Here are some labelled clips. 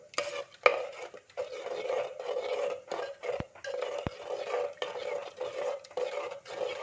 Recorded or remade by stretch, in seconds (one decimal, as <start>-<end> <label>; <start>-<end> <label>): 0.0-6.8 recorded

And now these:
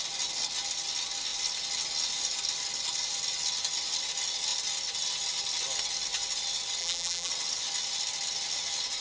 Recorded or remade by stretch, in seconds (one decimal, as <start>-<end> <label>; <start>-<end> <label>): 0.0-6.8 recorded; 6.8-7.3 remade; 7.3-9.0 recorded

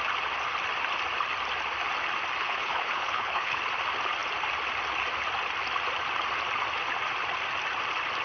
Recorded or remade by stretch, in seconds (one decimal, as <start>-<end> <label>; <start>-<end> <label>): 0.0-2.4 recorded; 2.4-3.6 remade; 3.6-8.2 recorded

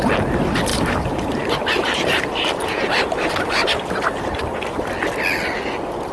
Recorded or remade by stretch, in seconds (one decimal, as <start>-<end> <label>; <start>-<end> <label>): 0.0-0.7 recorded; 0.7-4.4 remade; 4.4-6.1 recorded